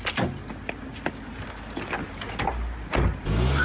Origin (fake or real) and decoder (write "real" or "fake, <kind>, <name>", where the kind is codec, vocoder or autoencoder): real